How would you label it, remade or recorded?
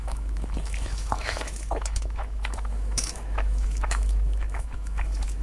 remade